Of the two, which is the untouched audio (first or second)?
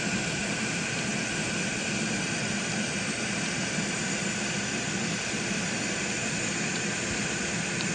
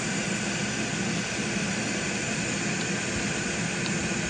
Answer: second